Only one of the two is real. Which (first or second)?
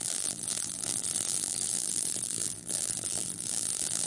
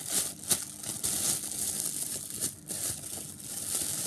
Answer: second